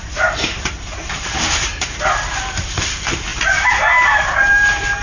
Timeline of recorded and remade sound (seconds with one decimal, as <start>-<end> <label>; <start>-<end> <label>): 0.0-1.7 remade; 1.7-2.6 recorded; 2.6-5.0 remade